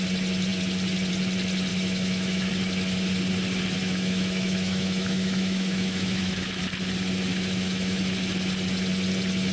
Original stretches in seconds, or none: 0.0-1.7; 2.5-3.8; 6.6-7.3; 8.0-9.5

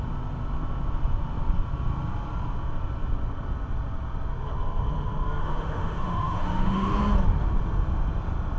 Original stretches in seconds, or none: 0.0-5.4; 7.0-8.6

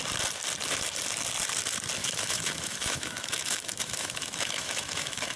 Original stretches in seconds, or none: 0.0-2.0

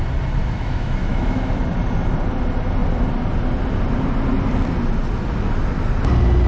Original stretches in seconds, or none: 0.0-0.4; 1.6-6.5

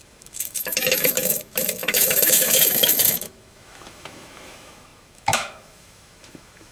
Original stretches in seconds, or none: none